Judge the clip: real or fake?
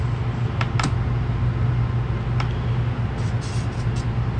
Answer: real